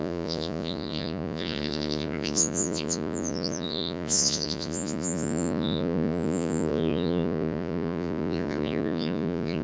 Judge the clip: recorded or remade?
remade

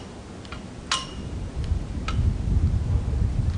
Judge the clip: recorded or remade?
recorded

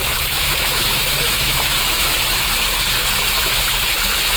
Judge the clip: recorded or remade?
remade